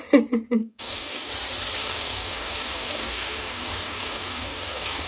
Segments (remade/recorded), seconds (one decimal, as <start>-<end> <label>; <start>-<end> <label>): 0.0-0.6 recorded; 0.6-1.3 remade; 1.3-1.8 recorded; 1.8-5.1 remade